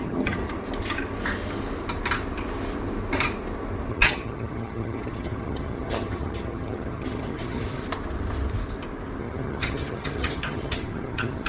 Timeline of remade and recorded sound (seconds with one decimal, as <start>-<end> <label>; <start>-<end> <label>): 0.0-0.4 remade; 0.4-3.9 recorded; 3.9-7.8 remade; 7.8-9.2 recorded; 9.2-11.5 remade